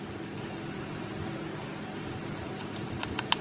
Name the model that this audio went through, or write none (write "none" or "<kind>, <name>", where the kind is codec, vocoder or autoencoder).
none